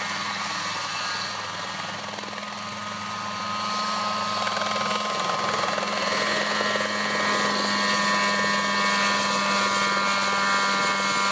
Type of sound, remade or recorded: recorded